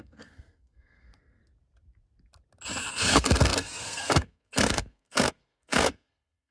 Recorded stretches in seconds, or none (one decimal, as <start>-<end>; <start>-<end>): 1.4-2.9